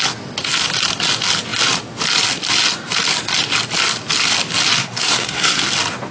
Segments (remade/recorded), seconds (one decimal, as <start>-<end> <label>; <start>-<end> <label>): 0.0-4.8 recorded; 4.8-5.6 remade; 5.6-6.1 recorded